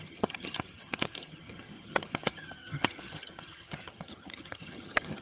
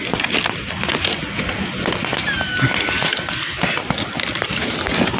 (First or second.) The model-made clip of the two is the first